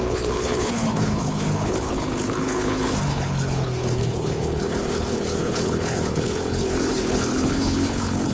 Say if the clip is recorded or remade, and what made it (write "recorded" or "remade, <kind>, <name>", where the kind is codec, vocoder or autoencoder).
remade, codec, HILCodec